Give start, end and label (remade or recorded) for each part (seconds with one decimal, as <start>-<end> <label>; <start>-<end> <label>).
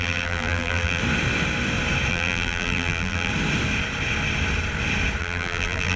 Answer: 0.0-1.0 remade; 1.0-2.1 recorded; 2.1-3.3 remade; 3.3-5.2 recorded; 5.2-6.0 remade